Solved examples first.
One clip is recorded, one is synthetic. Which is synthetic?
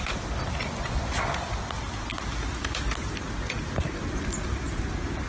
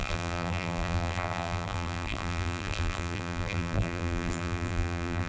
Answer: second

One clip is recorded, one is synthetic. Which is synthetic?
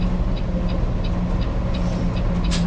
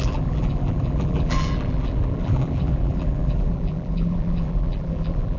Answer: second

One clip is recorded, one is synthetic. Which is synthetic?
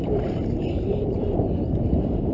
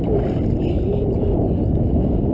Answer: first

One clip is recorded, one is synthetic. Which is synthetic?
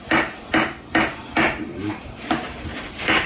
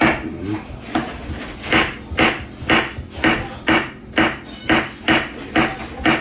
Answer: first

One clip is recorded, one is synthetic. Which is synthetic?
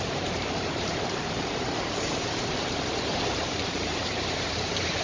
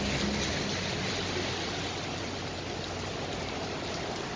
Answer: first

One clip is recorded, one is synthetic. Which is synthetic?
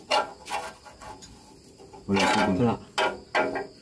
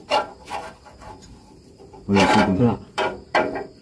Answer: second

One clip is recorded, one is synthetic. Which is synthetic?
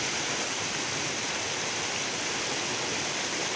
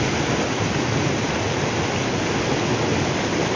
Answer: first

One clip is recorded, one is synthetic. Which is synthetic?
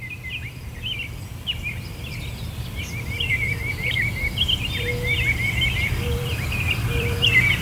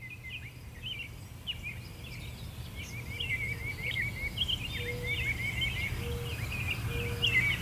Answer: first